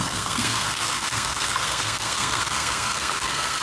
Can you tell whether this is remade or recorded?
remade